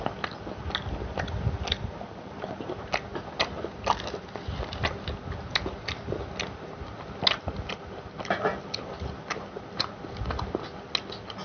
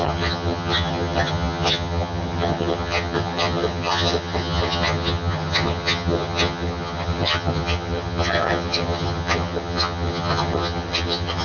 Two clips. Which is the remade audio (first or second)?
second